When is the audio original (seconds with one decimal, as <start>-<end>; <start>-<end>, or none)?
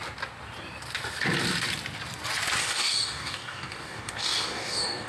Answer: 0.0-2.6